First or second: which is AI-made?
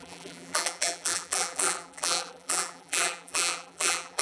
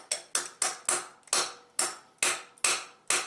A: first